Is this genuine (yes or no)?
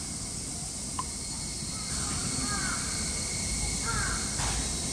yes